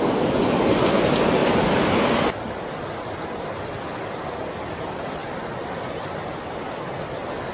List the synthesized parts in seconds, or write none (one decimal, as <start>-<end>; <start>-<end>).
none